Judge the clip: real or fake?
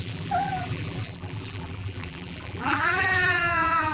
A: fake